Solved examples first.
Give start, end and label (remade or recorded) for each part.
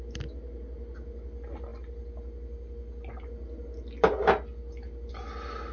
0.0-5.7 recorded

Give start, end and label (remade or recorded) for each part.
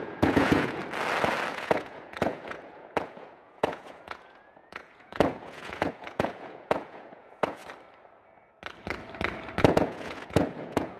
0.0-0.8 remade; 0.8-1.5 recorded; 1.5-7.6 remade; 7.6-9.6 recorded; 9.6-11.0 remade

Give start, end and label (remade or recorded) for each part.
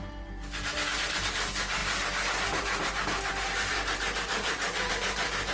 0.0-5.5 remade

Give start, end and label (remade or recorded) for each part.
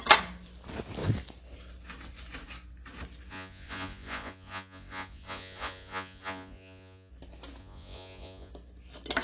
0.0-3.3 recorded; 3.3-7.1 remade; 7.1-7.6 recorded; 7.6-8.5 remade; 8.5-9.2 recorded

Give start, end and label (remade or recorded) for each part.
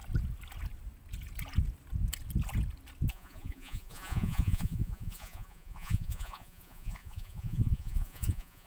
0.0-3.1 recorded; 3.1-8.7 remade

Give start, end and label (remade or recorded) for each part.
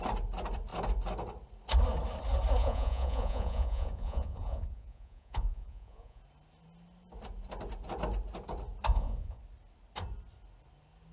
0.0-2.6 recorded; 2.6-6.2 remade; 6.2-8.9 recorded; 8.9-9.4 remade; 9.4-11.1 recorded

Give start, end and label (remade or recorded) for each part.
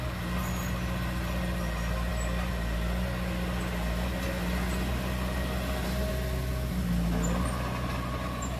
0.0-8.6 recorded